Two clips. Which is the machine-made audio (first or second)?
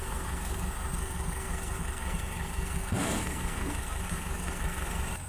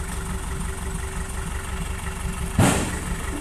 first